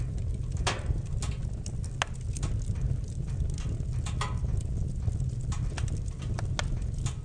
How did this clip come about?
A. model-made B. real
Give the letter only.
B